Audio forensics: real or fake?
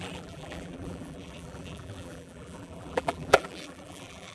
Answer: fake